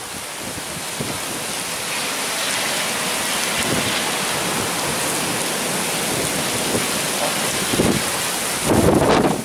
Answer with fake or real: real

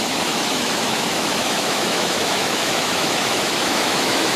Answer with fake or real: fake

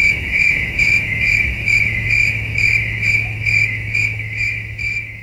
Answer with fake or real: fake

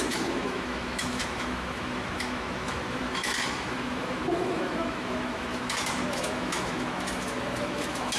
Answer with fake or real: fake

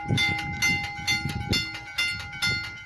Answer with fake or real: real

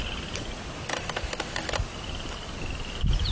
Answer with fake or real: real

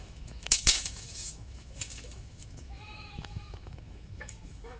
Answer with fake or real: fake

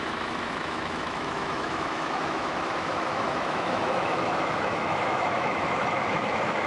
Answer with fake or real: fake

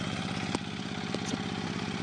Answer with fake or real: real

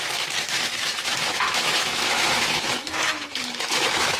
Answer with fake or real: fake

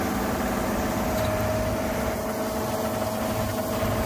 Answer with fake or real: real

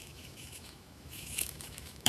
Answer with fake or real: fake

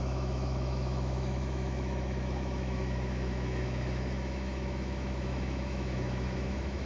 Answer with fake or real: fake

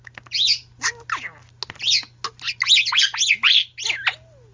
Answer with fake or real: real